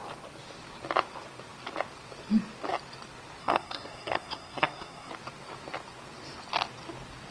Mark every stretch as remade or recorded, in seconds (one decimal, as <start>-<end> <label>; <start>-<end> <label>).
0.0-3.4 recorded; 3.4-5.1 remade; 5.1-7.3 recorded